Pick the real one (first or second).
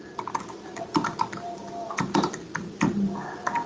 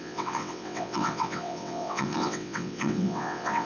first